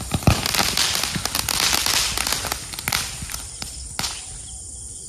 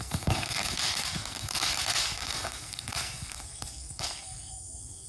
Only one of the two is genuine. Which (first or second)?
first